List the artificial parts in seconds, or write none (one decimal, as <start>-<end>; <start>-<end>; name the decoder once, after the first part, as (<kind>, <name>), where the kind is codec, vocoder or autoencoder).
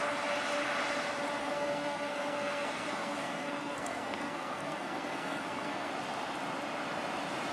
1.4-5.9 (codec, SNAC)